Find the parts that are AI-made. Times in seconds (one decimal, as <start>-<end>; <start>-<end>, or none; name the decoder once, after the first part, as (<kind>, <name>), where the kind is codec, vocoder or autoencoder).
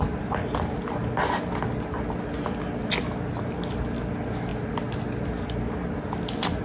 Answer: none